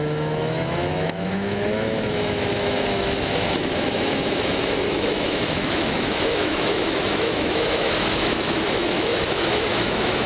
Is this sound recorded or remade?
remade